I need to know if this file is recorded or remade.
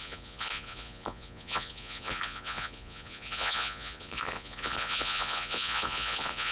remade